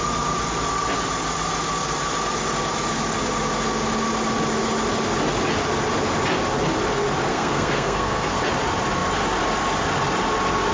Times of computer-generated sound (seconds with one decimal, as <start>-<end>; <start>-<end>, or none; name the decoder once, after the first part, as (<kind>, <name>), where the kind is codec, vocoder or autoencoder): 7.3-8.4 (codec, SNAC)